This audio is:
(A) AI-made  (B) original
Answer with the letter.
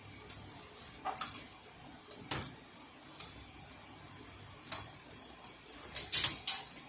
B